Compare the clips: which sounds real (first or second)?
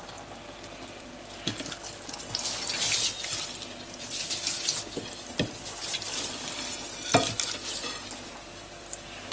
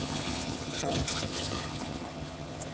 first